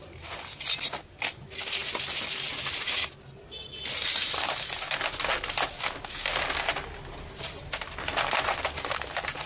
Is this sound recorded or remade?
recorded